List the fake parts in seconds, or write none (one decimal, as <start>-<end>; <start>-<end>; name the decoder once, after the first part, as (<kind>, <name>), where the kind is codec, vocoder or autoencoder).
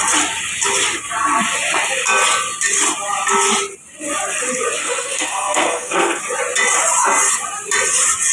4.8-6.2 (codec, SNAC)